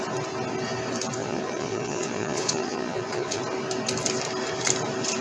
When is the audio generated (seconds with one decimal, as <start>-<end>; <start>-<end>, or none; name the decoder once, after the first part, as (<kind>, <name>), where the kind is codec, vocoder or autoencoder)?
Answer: 1.2-3.4 (vocoder, Vocos)